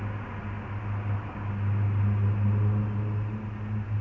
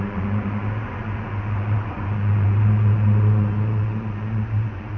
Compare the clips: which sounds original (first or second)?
first